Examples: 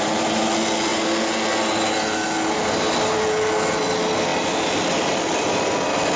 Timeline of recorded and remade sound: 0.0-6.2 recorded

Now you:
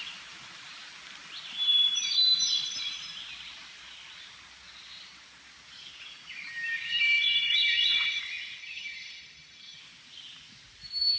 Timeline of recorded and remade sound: 0.0-6.9 recorded; 6.9-8.2 remade; 8.2-8.6 recorded; 8.6-9.8 remade; 9.8-11.2 recorded

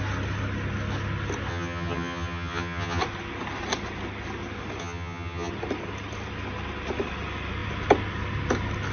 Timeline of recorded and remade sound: 0.0-1.5 recorded; 1.5-3.0 remade; 3.0-4.8 recorded; 4.8-5.5 remade; 5.5-8.9 recorded

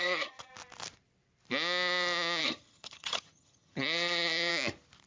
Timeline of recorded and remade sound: 0.0-0.5 remade; 0.5-2.4 recorded; 2.4-4.5 remade; 4.5-5.1 recorded

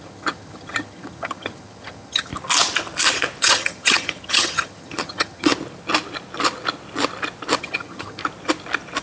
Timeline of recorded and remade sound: 0.0-2.3 remade; 2.3-3.4 recorded; 3.4-5.5 remade; 5.5-7.6 recorded; 7.6-8.2 remade; 8.2-9.0 recorded

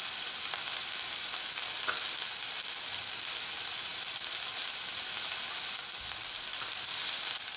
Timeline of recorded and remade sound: 0.0-7.6 recorded

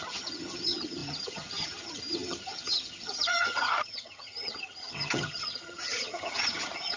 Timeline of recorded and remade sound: 0.0-7.0 remade

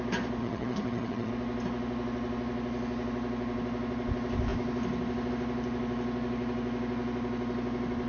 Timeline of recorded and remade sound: 0.0-0.4 recorded; 0.4-1.3 remade; 1.3-8.1 recorded